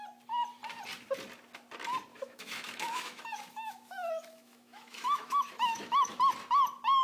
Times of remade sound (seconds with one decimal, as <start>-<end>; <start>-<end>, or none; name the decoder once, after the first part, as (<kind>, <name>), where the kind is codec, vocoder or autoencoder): 2.1-6.1 (autoencoder, DAC-VAE)